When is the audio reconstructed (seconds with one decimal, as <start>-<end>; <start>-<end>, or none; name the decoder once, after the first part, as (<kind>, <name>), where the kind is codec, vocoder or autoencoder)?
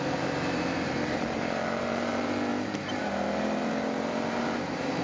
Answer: 0.0-5.0 (vocoder, BigVGAN v2)